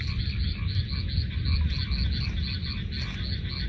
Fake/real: real